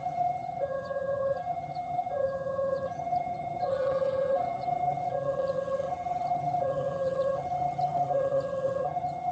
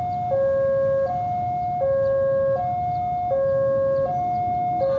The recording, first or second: second